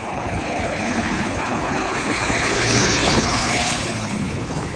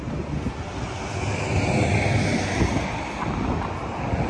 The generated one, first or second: first